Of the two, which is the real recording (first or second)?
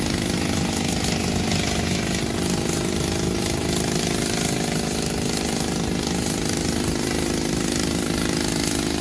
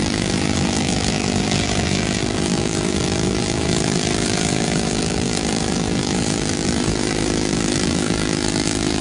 first